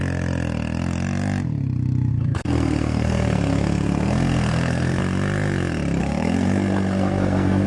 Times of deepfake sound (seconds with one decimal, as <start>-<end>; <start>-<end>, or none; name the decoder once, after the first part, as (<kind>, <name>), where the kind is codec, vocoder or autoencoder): 2.1-5.0 (codec, SNAC); 6.0-7.7